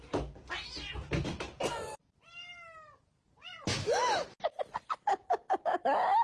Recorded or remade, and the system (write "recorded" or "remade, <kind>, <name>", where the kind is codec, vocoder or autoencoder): recorded